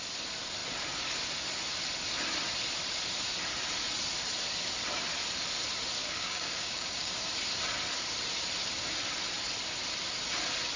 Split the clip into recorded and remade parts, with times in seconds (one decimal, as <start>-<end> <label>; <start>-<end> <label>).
0.0-6.0 recorded; 6.0-7.1 remade; 7.1-10.8 recorded